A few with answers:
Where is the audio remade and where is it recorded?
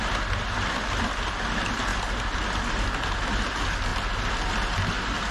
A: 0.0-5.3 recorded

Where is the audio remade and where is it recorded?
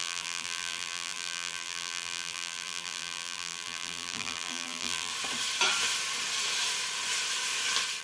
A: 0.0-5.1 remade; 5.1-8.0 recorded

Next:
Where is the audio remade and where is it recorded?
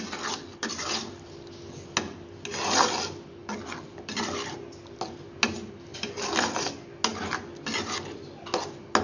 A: 0.0-3.4 recorded; 3.4-4.8 remade; 4.8-5.9 recorded; 5.9-6.6 remade; 6.6-7.1 recorded; 7.1-7.7 remade; 7.7-9.0 recorded